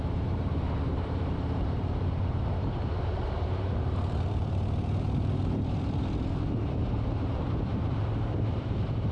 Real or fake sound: fake